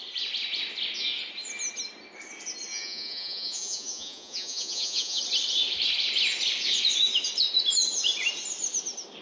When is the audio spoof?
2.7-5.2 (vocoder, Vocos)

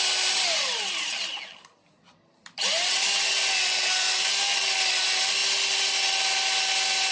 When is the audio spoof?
none

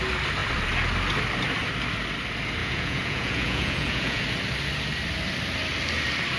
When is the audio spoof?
2.6-4.2 (vocoder, Vocos)

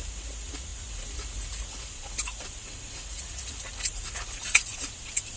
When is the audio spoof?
0.0-5.4 (vocoder, Vocos)

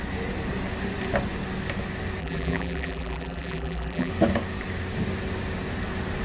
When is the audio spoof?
2.2-4.1 (vocoder, BigVGAN v2)

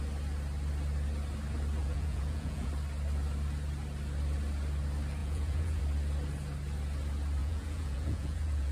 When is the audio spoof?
1.8-2.7 (vocoder, Vocos); 5.2-5.8; 7.4-8.7

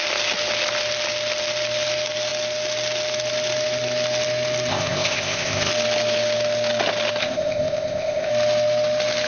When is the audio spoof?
4.7-5.7 (codec, ZipCodec); 7.2-8.3